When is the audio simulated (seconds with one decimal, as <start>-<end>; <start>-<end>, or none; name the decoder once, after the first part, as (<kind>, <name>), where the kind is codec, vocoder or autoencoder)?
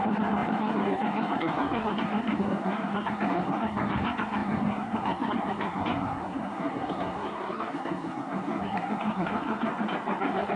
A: 0.0-9.7 (codec, SNAC); 10.2-10.6